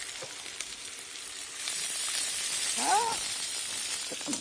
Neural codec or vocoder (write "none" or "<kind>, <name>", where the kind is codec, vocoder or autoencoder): vocoder, BigVGAN v2